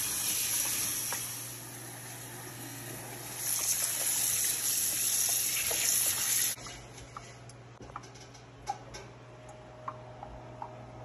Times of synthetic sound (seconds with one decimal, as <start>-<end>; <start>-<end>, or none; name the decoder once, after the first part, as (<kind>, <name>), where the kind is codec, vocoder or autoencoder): 2.5-3.0 (codec, SNAC)